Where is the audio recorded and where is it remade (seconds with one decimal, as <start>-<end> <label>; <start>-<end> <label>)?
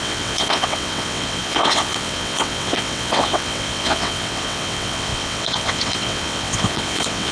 0.0-7.3 remade